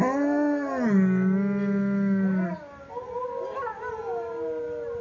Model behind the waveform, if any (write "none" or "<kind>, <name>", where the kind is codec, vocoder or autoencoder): none